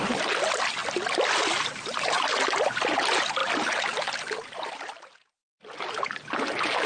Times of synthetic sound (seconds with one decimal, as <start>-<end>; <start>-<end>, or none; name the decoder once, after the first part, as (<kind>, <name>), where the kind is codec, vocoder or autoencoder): none